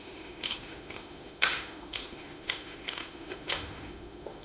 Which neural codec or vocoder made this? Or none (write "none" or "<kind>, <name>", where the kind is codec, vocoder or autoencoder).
autoencoder, DAC-VAE